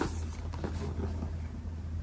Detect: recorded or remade recorded